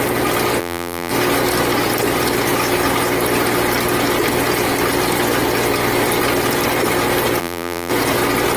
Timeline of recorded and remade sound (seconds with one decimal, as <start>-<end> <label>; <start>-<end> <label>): 0.0-0.6 recorded; 0.6-1.1 remade; 1.1-7.4 recorded; 7.4-7.9 remade; 7.9-8.6 recorded